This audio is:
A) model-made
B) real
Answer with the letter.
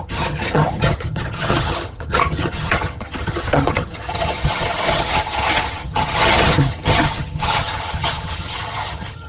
A